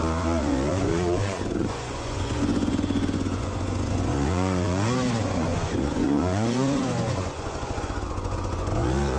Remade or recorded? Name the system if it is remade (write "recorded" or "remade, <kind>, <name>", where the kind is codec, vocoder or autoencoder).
remade, vocoder, Vocos